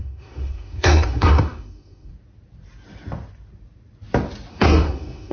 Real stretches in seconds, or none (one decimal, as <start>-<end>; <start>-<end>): 2.1-4.5